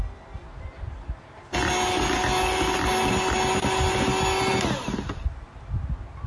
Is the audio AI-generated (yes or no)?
no